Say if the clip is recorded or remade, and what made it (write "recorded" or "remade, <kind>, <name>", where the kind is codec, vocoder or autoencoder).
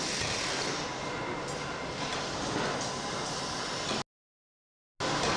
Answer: recorded